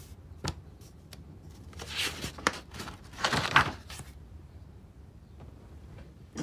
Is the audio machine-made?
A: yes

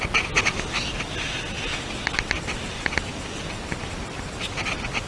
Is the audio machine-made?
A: no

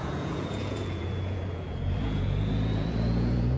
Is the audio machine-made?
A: yes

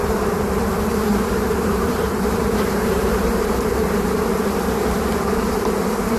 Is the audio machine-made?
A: yes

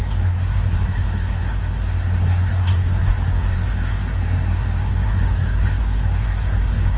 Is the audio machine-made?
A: yes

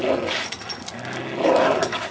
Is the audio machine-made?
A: no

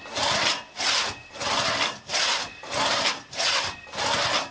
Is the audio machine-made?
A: no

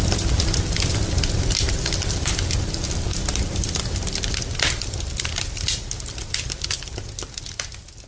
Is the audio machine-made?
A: no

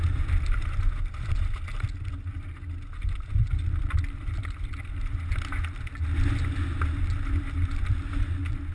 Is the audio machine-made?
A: no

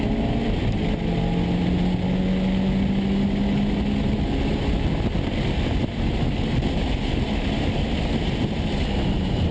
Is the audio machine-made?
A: no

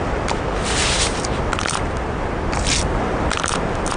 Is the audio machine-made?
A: yes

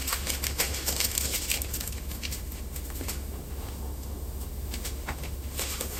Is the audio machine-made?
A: yes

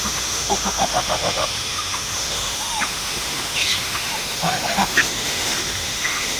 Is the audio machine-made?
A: yes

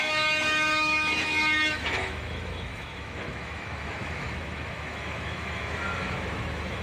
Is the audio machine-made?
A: yes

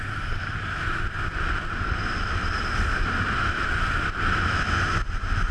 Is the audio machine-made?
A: no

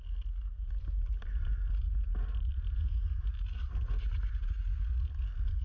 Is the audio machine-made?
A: no